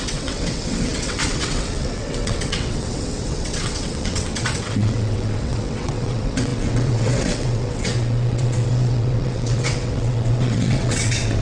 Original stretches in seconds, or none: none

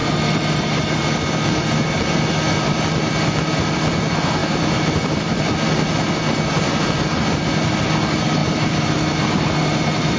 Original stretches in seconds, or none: 0.0-10.2

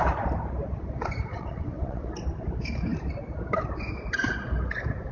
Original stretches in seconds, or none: 0.0-1.3; 2.1-5.1

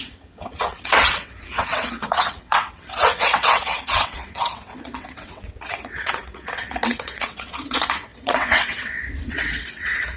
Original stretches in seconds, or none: none

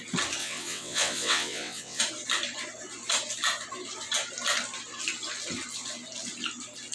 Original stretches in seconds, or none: 0.0-0.4; 2.0-6.9